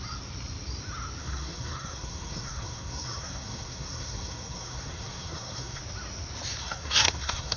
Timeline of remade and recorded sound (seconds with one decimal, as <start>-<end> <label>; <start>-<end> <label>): 0.0-1.2 recorded; 1.2-5.8 remade; 5.8-6.6 recorded; 6.6-7.6 remade